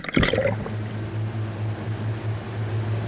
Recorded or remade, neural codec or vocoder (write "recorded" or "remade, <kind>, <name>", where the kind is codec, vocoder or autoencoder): recorded